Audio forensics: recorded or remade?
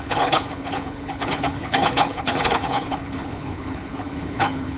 remade